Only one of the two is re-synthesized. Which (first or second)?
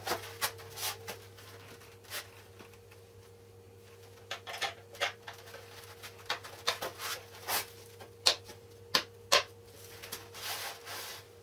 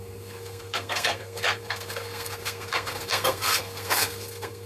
second